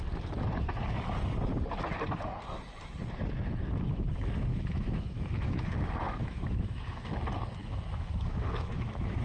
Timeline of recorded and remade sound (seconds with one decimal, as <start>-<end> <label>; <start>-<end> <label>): 0.0-4.5 recorded; 4.5-5.6 remade; 5.6-6.2 recorded; 6.2-7.1 remade; 7.1-7.6 recorded; 7.6-9.2 remade

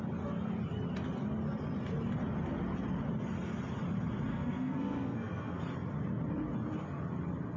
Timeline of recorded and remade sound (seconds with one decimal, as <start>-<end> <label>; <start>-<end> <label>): 0.0-4.3 recorded; 4.3-5.6 remade; 5.6-7.6 recorded